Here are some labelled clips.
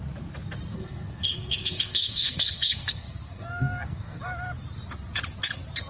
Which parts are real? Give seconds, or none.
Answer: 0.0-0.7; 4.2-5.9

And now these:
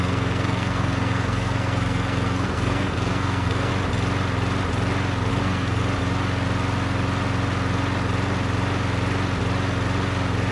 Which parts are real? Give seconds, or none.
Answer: 3.7-5.3; 5.8-10.5

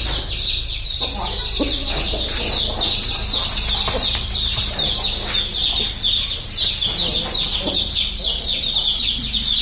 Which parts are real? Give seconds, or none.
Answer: 0.0-9.6

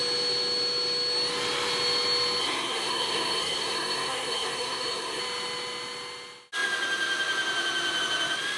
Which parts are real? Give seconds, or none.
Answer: 0.0-2.4; 5.2-8.6